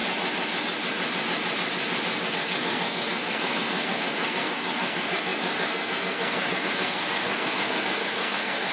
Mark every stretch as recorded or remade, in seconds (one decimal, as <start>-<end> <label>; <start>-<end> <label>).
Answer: 0.0-2.3 recorded; 2.3-8.7 remade